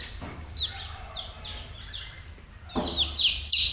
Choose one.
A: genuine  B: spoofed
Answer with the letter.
A